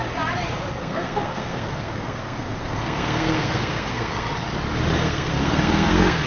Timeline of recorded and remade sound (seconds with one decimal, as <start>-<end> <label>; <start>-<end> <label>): 0.0-0.8 recorded; 0.8-4.3 remade; 4.3-5.0 recorded; 5.0-6.3 remade